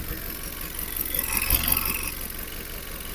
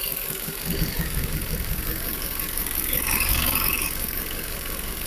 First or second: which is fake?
second